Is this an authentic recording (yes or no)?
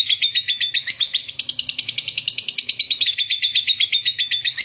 no